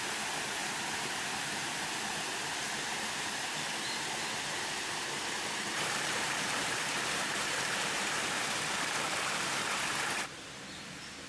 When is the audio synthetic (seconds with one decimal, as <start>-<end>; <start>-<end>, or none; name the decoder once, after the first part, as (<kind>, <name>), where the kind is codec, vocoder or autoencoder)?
0.6-1.8 (vocoder, BigVGAN v2); 5.2-9.6